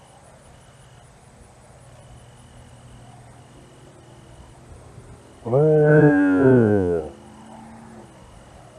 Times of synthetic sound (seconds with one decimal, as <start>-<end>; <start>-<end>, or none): 5.9-7.0